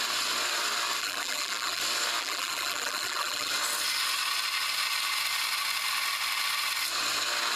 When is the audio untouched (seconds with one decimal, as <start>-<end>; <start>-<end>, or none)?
0.0-1.0; 1.8-2.2; 3.5-7.6